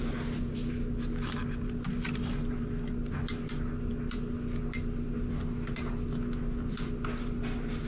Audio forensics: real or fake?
real